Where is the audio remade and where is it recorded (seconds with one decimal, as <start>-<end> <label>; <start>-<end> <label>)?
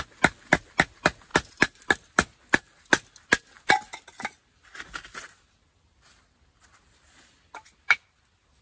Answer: 0.0-8.6 recorded